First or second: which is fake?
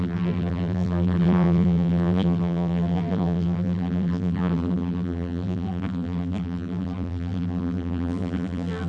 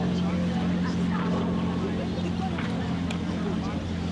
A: first